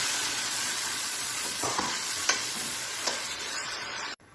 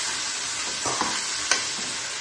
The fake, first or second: first